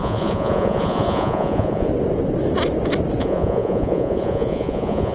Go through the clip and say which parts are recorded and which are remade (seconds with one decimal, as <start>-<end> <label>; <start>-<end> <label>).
0.0-1.9 remade; 1.9-3.2 recorded; 3.2-5.1 remade

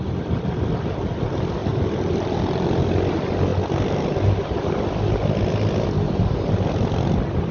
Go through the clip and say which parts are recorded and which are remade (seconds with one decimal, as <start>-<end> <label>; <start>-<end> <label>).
0.0-7.5 recorded

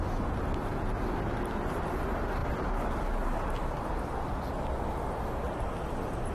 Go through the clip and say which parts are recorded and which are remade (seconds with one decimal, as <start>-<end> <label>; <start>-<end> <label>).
0.0-6.3 recorded

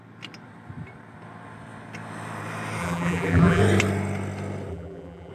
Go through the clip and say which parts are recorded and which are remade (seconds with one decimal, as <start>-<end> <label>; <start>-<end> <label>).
0.0-2.8 recorded; 2.8-3.6 remade; 3.6-4.7 recorded; 4.7-5.3 remade

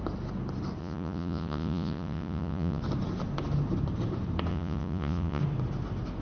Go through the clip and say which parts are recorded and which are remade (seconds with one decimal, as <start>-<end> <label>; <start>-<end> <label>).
0.0-0.8 recorded; 0.8-2.8 remade; 2.8-4.5 recorded; 4.5-5.4 remade; 5.4-6.2 recorded

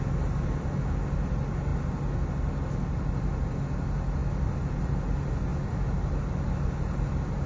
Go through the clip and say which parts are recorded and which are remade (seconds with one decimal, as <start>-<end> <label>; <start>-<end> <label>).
0.0-7.5 recorded